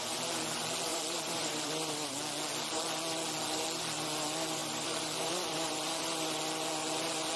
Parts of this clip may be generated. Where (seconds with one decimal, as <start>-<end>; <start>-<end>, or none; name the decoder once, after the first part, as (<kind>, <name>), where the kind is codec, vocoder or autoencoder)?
0.9-2.1 (vocoder, BigVGAN v2); 4.6-6.4